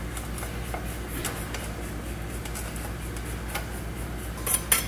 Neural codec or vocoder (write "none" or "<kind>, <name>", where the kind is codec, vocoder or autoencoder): none